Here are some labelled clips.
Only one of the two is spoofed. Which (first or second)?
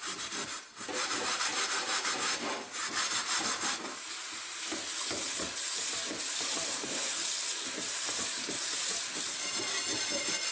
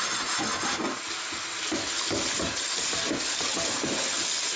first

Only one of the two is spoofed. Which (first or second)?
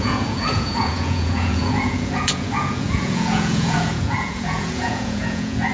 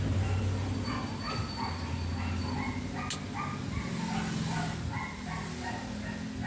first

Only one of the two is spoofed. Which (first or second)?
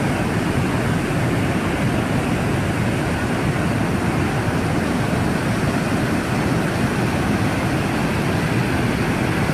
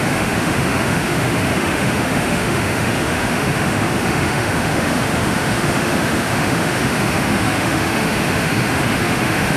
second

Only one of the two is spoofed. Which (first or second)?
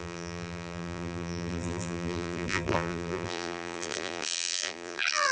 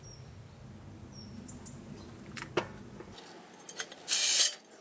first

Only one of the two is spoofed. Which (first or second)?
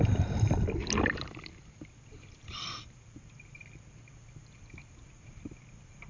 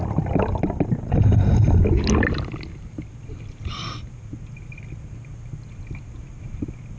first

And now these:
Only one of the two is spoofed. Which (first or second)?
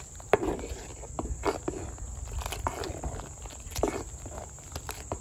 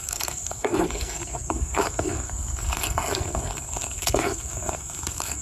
second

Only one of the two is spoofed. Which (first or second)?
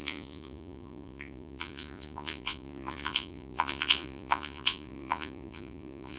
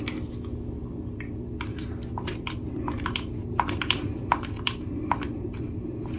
first